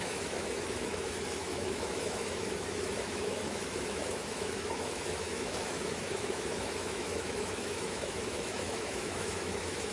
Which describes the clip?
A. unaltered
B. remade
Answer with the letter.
B